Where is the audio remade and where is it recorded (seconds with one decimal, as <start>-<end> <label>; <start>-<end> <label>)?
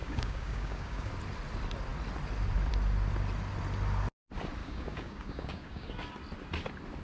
0.0-1.1 remade; 1.1-4.6 recorded; 4.6-5.9 remade; 5.9-7.0 recorded